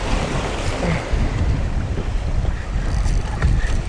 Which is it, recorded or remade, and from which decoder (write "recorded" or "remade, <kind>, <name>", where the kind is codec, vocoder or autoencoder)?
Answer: remade, vocoder, BigVGAN v2